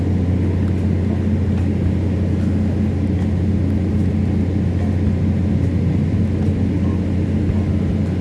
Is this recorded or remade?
recorded